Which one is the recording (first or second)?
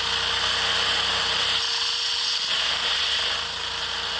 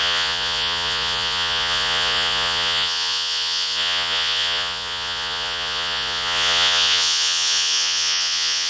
first